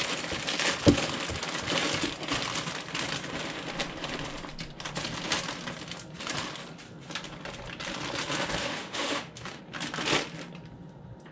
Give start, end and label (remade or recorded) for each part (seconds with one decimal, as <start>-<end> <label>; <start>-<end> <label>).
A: 0.0-8.6 recorded; 8.6-9.6 remade; 9.6-11.3 recorded